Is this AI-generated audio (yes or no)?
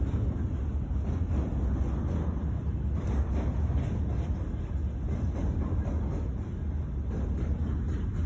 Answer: no